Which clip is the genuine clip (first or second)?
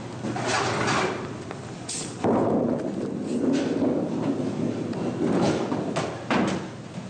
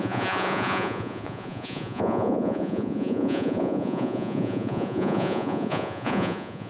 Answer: first